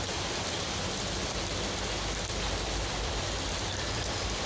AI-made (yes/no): no